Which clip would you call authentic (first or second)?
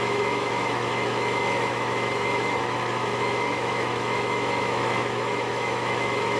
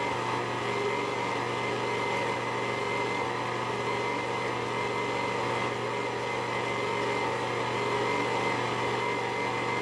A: second